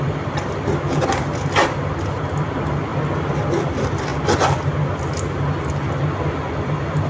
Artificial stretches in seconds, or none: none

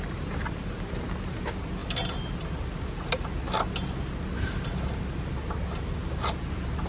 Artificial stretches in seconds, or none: none

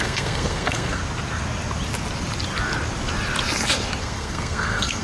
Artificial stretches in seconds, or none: 0.0-1.0 (codec, SNAC); 4.0-5.0

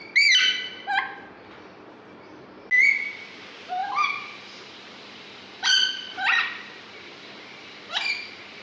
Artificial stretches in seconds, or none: 3.8-8.6 (vocoder, BigVGAN v2)

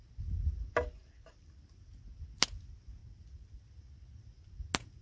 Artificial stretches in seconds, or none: 1.0-1.7 (vocoder, BigVGAN v2); 3.0-3.6

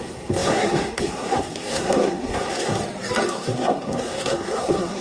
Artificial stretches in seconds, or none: 0.0-2.8 (codec, SNAC); 3.3-5.0